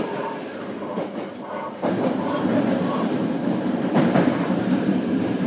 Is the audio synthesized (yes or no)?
yes